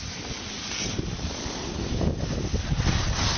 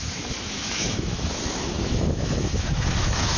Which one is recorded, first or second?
first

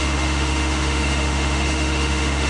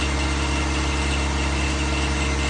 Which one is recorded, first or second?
second